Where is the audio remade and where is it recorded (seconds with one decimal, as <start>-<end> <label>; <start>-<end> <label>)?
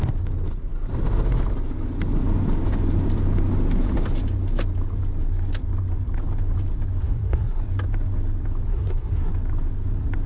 0.0-7.0 recorded; 7.0-7.6 remade; 7.6-8.7 recorded; 8.7-9.3 remade; 9.3-10.3 recorded